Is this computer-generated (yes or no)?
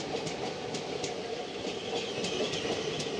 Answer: yes